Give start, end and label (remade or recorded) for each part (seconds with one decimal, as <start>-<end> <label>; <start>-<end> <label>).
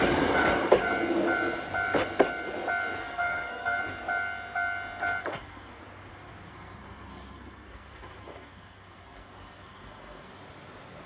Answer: 0.0-3.0 recorded; 3.0-3.8 remade; 3.8-5.3 recorded; 5.3-5.8 remade; 5.8-6.5 recorded; 6.5-10.3 remade; 10.3-11.1 recorded